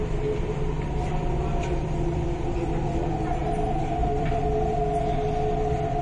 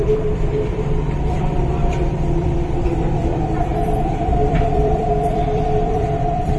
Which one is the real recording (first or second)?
first